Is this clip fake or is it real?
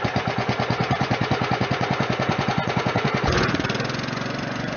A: fake